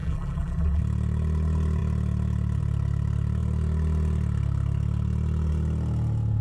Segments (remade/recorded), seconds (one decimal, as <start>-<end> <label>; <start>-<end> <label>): 0.0-0.8 remade; 0.8-6.4 recorded